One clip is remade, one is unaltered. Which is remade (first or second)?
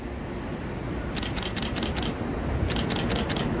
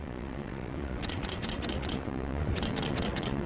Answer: second